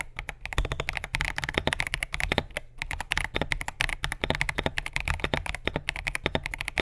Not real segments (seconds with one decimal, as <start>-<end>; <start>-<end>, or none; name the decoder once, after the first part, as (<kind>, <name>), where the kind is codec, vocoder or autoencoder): none